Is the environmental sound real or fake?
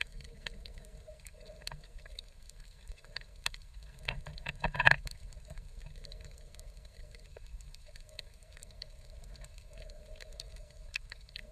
fake